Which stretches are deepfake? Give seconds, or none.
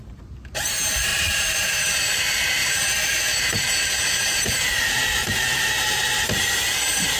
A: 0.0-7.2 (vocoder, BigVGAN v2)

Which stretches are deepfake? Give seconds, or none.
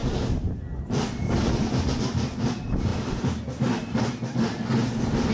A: none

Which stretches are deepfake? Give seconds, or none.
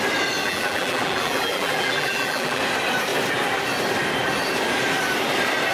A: 0.4-2.6 (vocoder, BigVGAN v2)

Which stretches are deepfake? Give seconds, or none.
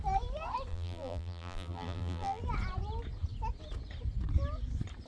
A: 0.7-2.4 (vocoder, BigVGAN v2)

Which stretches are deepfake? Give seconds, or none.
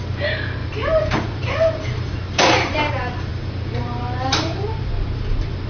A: 0.6-2.9 (vocoder, BigVGAN v2); 3.3-4.9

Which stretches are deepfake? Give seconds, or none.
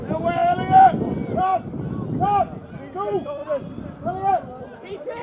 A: 0.0-1.5 (vocoder, BigVGAN v2); 2.7-3.4; 4.3-5.2